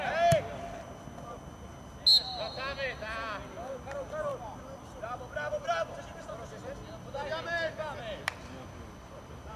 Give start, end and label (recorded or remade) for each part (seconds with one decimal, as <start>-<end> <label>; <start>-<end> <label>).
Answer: 0.0-9.6 recorded